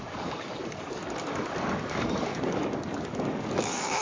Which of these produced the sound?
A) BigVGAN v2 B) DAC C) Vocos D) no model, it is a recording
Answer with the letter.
B